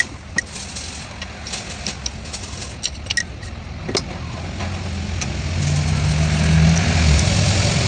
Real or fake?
real